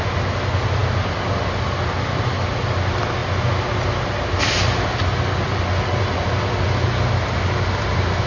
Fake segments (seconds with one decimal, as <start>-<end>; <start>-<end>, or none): none